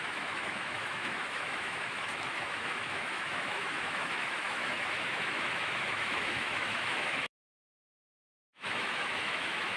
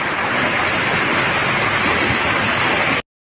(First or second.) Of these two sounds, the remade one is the first